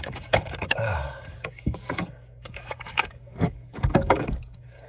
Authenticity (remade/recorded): remade